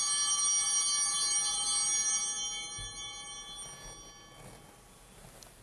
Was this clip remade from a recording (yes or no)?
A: no